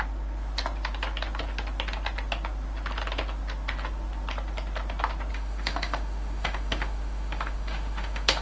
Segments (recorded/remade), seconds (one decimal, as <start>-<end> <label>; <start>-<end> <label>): 0.0-5.3 recorded; 5.3-8.4 remade